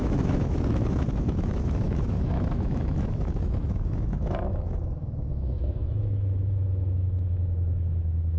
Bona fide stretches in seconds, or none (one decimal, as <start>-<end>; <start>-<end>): none

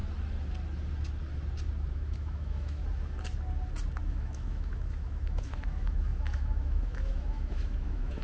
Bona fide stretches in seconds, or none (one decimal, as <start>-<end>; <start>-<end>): 0.0-1.9; 2.8-4.0

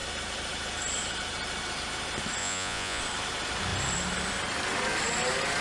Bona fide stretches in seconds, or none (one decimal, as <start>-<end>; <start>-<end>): 0.0-2.4; 3.0-5.6

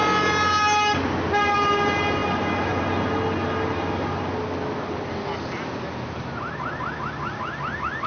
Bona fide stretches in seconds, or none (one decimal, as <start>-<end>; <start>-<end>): 0.0-8.1

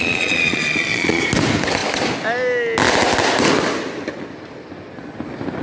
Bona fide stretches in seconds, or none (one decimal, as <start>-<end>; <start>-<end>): 1.2-5.6

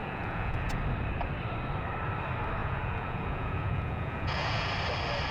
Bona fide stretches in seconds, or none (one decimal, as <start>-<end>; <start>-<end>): 0.8-2.6; 4.7-5.3